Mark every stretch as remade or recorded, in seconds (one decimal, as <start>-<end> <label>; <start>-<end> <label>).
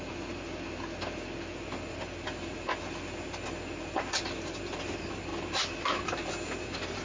0.0-7.0 recorded